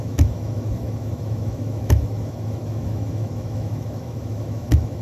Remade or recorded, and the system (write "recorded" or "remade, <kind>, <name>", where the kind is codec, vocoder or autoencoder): remade, autoencoder, DAC-VAE